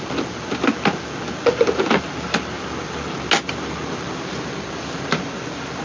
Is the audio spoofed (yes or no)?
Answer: no